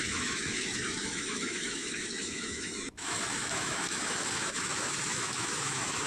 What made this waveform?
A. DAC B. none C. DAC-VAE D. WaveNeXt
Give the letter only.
C